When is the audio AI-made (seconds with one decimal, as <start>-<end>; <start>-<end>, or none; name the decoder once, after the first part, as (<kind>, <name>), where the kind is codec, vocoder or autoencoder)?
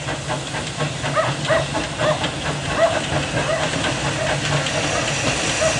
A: 2.0-3.1 (vocoder, BigVGAN v2)